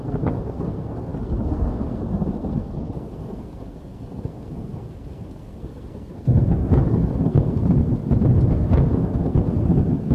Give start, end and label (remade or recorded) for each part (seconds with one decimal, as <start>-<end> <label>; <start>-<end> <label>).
0.0-7.9 remade; 7.9-8.5 recorded; 8.5-10.1 remade